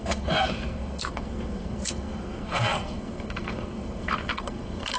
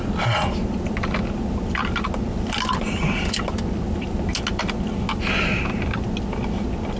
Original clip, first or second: second